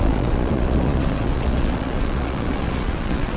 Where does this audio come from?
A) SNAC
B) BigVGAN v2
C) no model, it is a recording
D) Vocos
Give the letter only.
D